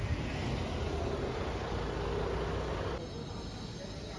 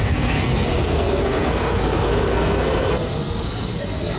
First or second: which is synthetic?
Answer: second